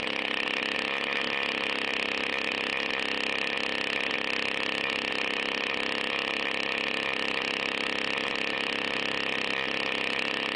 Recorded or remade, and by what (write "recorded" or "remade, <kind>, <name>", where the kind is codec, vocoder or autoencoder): recorded